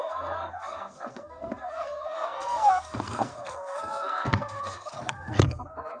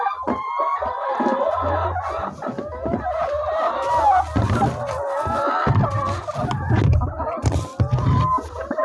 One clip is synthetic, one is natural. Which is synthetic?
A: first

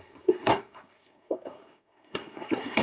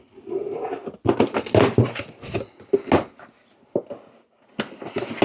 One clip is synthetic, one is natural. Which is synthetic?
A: first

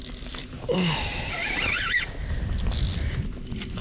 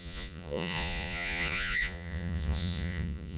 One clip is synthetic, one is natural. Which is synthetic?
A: second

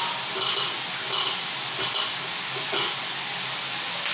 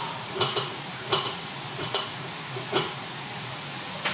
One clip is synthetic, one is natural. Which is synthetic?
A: second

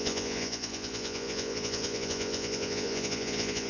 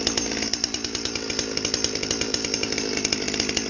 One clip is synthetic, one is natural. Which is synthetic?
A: first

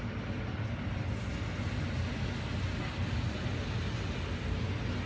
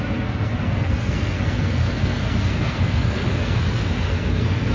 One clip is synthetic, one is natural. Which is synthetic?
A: second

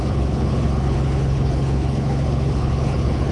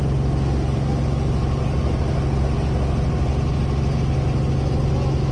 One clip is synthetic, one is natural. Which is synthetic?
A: first